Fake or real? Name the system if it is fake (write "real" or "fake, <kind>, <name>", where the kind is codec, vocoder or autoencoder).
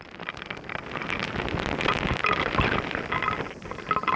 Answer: real